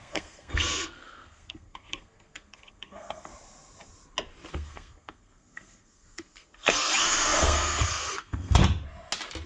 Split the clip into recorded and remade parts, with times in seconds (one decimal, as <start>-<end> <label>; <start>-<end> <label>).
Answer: 0.0-3.3 remade; 3.3-4.5 recorded; 4.5-8.6 remade; 8.6-9.5 recorded